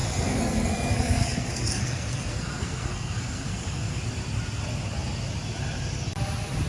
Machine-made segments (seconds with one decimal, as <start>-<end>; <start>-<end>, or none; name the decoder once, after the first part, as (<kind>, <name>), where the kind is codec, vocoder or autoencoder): 0.0-4.0 (codec, SNAC)